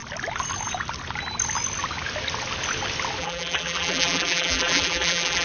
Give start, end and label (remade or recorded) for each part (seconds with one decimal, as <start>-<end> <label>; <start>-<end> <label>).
0.0-3.2 recorded; 3.2-5.4 remade